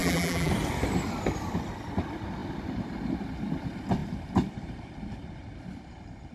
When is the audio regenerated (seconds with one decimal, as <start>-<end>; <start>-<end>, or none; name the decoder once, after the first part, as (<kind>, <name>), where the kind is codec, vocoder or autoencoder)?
0.0-0.5 (vocoder, BigVGAN v2)